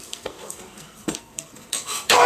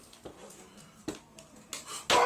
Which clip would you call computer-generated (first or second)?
first